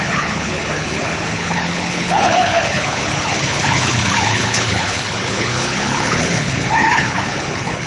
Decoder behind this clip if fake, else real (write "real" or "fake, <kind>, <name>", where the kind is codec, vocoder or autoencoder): fake, codec, HILCodec